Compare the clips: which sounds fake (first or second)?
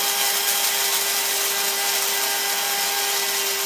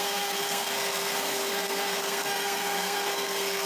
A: second